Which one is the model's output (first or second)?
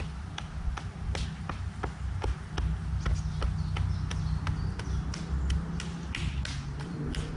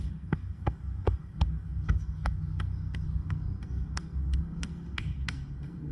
second